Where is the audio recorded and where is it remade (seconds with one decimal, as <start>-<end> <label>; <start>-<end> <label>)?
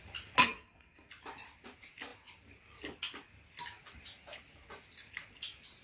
0.0-0.4 recorded; 0.4-1.1 remade; 1.1-5.8 recorded